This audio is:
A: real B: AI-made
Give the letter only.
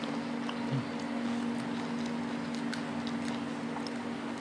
A